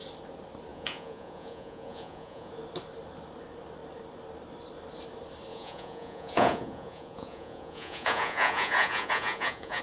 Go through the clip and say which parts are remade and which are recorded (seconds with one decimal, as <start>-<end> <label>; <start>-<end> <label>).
0.0-0.7 recorded; 0.7-2.5 remade; 2.5-5.5 recorded; 5.5-9.8 remade